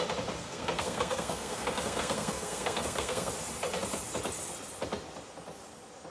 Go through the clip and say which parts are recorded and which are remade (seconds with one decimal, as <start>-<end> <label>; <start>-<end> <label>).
0.0-0.4 recorded; 0.4-3.3 remade; 3.3-6.1 recorded